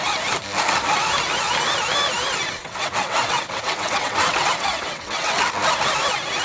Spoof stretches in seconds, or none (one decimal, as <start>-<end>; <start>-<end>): 2.6-5.4